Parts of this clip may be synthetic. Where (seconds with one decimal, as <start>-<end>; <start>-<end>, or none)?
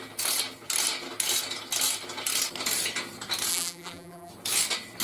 3.5-4.3